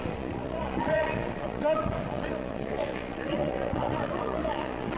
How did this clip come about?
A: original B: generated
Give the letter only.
B